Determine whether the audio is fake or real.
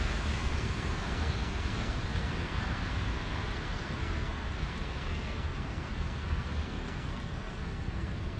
fake